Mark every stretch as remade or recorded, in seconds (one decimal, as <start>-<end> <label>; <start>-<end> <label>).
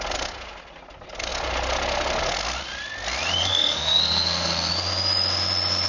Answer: 0.0-3.4 recorded; 3.4-4.7 remade; 4.7-5.9 recorded